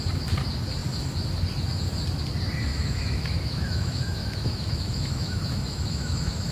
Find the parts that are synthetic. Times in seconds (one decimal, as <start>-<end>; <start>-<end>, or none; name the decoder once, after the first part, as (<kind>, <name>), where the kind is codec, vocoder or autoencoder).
2.7-6.5 (autoencoder, DAC-VAE)